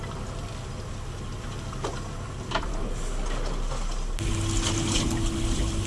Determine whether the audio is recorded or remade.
recorded